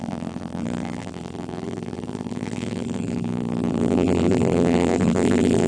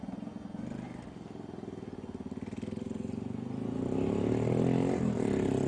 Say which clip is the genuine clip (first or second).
second